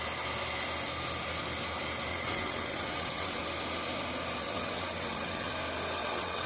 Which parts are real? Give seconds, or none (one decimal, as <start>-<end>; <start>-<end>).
0.0-2.1; 3.4-4.4; 5.5-6.0